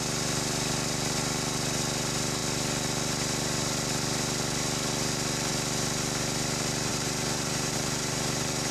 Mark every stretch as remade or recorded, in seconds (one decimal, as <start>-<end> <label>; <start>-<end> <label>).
0.0-6.9 recorded; 6.9-8.7 remade